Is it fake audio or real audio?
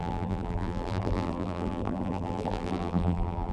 fake